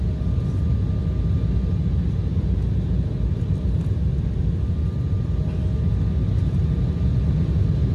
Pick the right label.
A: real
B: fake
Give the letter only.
A